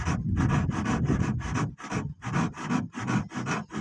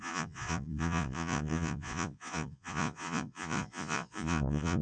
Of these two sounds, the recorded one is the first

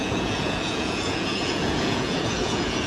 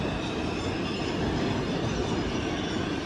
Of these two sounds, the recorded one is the second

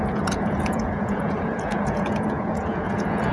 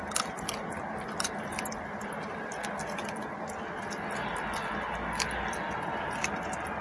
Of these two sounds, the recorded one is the second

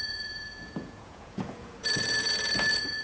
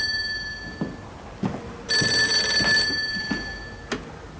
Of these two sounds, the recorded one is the second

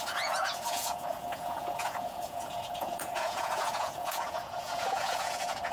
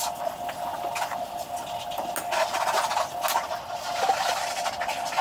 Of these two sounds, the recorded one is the second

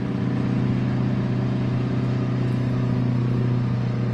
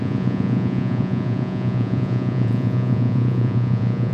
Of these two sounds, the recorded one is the first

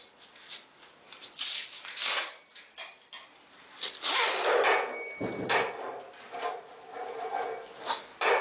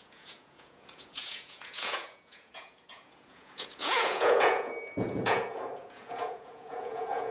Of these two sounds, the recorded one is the first